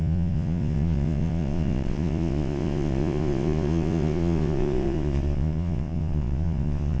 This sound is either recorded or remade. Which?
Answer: remade